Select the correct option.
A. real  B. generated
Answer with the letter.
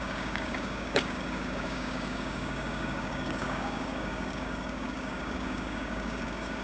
B